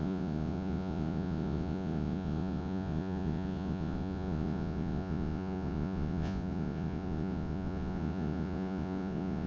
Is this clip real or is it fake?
fake